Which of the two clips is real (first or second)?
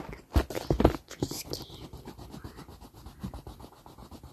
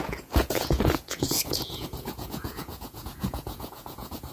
first